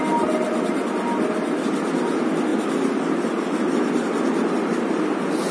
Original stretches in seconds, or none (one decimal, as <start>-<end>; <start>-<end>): 0.0-5.5